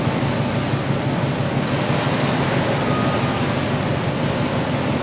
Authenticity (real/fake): real